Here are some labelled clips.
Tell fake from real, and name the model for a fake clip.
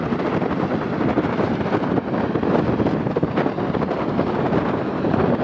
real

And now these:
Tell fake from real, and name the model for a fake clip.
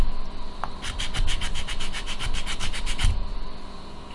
real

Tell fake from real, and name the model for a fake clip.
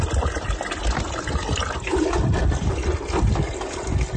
real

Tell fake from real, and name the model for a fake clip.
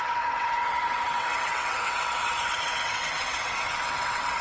fake, vocoder, WaveNeXt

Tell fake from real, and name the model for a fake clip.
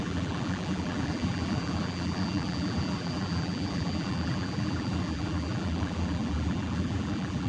fake, vocoder, BigVGAN v2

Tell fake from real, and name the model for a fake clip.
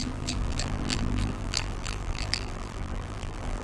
fake, vocoder, BigVGAN v2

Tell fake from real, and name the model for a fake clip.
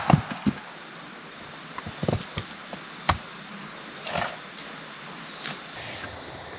real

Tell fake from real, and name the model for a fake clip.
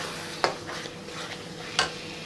real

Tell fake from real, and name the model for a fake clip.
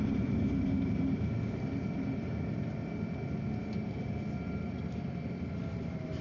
real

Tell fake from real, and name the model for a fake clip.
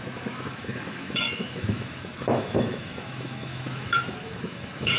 fake, autoencoder, DAC-VAE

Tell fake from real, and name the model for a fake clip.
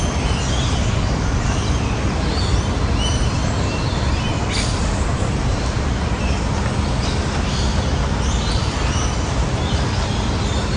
real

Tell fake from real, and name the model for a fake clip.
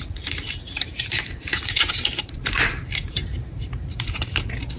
fake, vocoder, BigVGAN v2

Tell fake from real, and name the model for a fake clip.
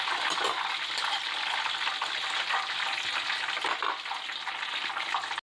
real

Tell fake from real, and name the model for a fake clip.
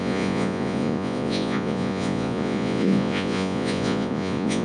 fake, vocoder, Vocos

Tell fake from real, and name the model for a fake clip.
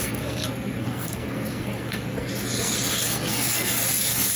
fake, codec, SNAC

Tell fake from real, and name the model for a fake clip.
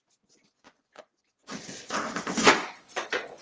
fake, vocoder, Vocos